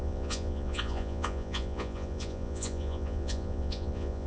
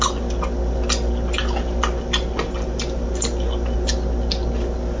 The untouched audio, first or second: second